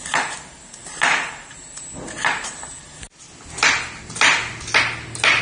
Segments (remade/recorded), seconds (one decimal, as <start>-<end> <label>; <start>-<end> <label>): 0.0-5.4 recorded